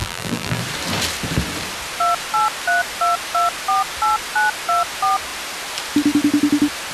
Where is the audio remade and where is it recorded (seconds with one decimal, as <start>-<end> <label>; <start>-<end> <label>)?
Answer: 0.0-0.6 remade; 0.6-6.9 recorded